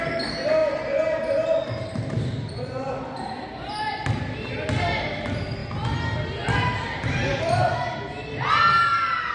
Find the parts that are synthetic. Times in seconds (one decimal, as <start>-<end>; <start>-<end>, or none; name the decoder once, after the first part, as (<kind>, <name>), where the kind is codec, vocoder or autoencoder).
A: none